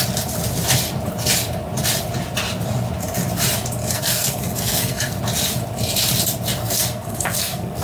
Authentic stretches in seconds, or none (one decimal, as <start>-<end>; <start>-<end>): 0.0-3.8; 5.2-6.6